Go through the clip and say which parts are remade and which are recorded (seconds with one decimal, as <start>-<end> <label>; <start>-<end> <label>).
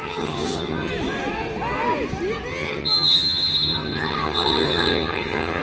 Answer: 0.0-0.9 remade; 0.9-2.5 recorded; 2.5-5.6 remade